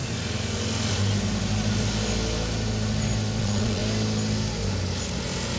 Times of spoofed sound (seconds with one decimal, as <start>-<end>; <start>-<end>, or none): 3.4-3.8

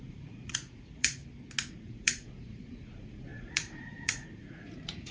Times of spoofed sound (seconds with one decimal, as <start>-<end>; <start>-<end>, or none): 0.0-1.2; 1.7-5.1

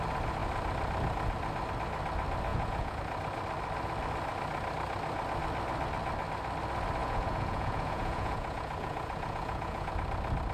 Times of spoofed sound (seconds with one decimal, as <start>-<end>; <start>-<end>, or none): 2.5-3.0; 7.0-9.9

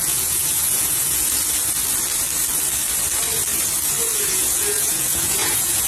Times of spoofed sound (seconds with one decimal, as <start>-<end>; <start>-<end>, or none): 0.0-1.4; 4.3-5.9

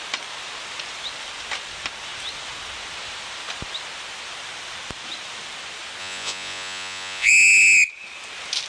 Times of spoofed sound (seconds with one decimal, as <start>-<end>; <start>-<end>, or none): 6.0-7.3

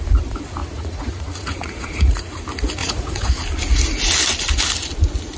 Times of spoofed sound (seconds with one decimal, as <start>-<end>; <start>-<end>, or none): 0.6-2.4; 2.8-3.3